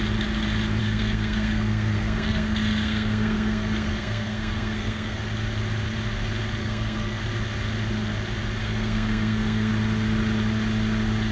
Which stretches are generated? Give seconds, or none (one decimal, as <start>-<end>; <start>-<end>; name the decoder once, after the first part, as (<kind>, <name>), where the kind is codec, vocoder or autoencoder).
0.8-5.2 (codec, SNAC); 6.6-7.2; 8.6-9.7